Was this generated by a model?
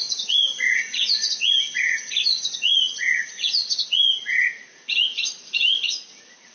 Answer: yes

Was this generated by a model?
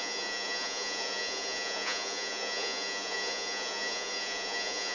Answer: yes